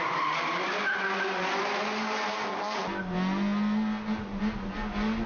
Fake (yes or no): no